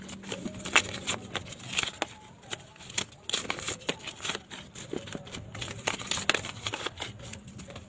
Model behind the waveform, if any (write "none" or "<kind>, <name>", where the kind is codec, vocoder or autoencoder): none